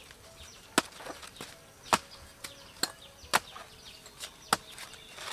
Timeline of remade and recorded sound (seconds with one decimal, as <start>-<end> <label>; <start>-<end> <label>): 0.0-5.3 recorded